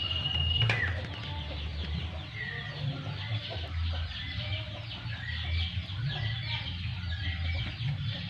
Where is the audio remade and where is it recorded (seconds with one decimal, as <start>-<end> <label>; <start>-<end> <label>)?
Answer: 0.0-6.9 recorded; 6.9-7.6 remade; 7.6-8.3 recorded